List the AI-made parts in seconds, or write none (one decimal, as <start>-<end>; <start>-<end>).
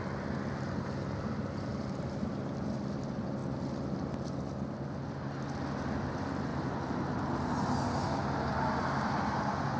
1.7-2.3